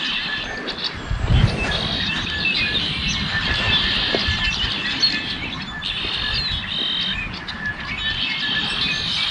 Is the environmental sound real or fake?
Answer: real